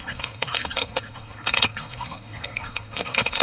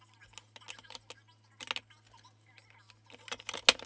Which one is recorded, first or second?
second